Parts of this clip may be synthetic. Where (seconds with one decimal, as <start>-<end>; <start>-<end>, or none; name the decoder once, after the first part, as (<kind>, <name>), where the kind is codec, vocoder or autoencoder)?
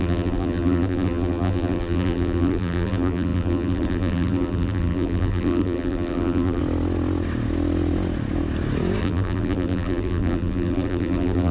0.0-6.6 (vocoder, BigVGAN v2); 9.0-11.5